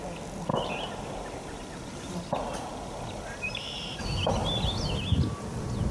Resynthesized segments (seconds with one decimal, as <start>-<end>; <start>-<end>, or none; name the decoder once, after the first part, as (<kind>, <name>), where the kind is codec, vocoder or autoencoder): 0.5-4.0 (vocoder, BigVGAN v2)